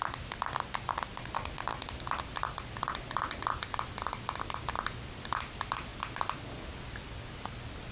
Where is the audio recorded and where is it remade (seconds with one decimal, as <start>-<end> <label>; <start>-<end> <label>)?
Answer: 0.0-7.9 recorded